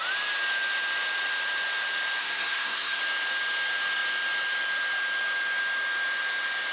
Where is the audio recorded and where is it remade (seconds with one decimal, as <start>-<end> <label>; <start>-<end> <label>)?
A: 0.0-2.2 recorded; 2.2-3.0 remade; 3.0-6.7 recorded